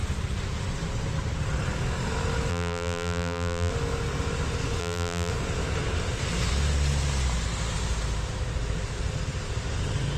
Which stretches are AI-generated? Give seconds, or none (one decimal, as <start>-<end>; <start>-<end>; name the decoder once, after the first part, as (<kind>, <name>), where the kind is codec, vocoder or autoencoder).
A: 2.5-3.7 (vocoder, BigVGAN v2); 4.8-5.3